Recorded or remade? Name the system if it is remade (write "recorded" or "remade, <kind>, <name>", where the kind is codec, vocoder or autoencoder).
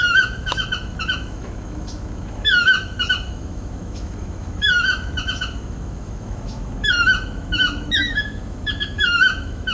remade, autoencoder, DAC-VAE